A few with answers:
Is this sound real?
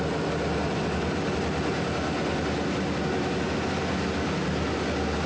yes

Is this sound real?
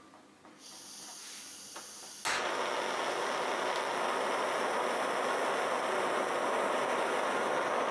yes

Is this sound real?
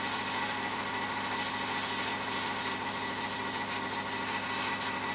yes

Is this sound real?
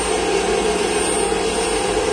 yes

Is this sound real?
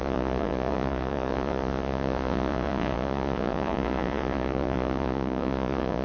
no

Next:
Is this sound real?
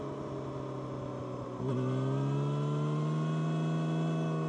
yes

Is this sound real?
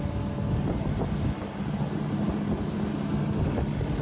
yes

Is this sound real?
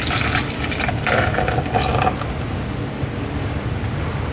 yes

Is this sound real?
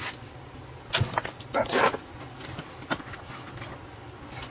yes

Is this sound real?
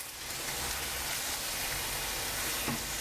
yes